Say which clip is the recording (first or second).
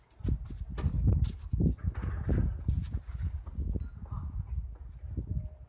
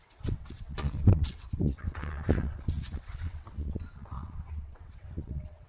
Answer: first